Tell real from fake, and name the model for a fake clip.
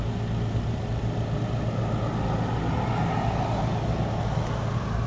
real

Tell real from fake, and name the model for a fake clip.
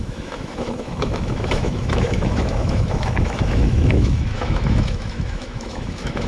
fake, autoencoder, DAC-VAE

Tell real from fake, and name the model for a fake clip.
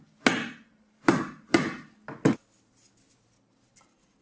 real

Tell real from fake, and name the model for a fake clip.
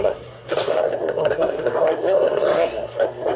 fake, codec, SNAC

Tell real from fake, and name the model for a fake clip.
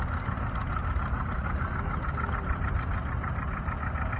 real